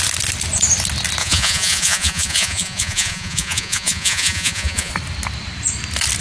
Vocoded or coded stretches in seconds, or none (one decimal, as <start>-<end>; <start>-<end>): 1.2-4.9